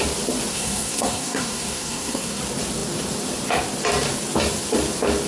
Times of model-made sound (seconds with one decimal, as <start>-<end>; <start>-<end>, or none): 0.5-2.4